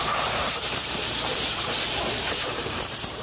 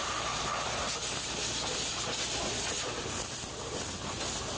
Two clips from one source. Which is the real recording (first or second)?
second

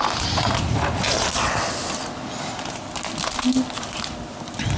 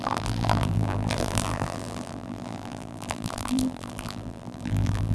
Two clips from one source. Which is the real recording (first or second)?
first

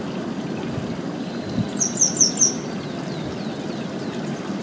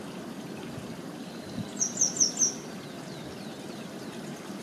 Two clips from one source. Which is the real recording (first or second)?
first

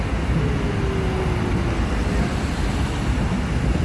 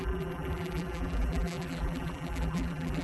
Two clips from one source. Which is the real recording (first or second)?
first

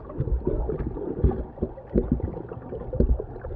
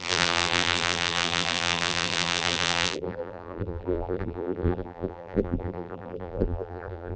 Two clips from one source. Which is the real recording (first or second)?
first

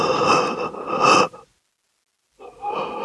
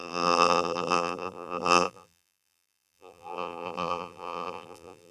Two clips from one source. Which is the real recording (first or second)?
first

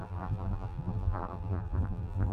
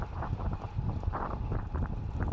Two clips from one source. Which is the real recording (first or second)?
second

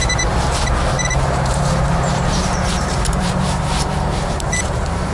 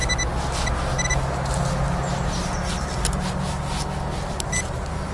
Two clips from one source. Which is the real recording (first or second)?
second